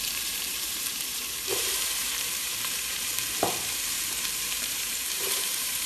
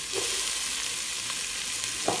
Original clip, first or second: second